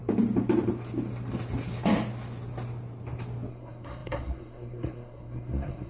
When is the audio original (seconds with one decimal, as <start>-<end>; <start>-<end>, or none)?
0.0-3.5

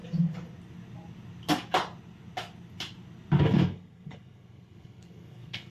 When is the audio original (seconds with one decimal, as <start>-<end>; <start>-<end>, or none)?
0.0-3.4

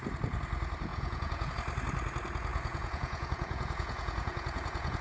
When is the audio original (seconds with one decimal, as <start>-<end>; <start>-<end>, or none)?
0.0-0.9; 1.5-2.5

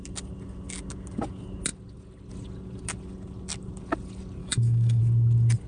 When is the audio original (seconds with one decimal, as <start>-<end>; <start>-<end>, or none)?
0.0-4.4; 5.0-5.7

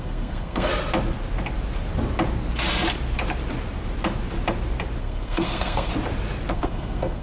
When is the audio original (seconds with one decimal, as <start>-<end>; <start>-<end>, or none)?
0.7-5.0; 5.9-6.5

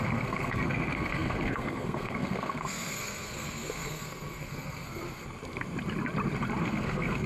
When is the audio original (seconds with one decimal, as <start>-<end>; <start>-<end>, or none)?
5.2-6.6

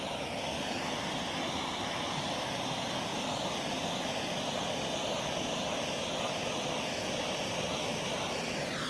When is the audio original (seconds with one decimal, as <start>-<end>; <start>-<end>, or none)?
0.0-8.9